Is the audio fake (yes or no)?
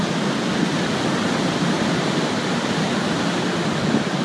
no